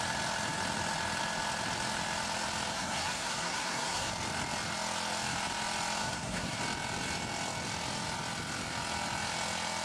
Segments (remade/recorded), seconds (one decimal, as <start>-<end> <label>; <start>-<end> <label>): 0.0-2.7 recorded; 2.7-4.1 remade; 4.1-6.0 recorded; 6.0-6.6 remade; 6.6-9.8 recorded